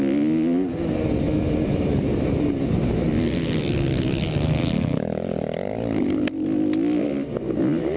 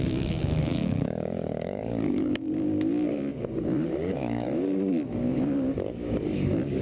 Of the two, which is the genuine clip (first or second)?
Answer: first